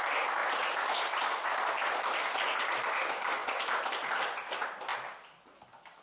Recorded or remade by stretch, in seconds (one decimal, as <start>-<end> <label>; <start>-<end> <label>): 0.0-6.0 recorded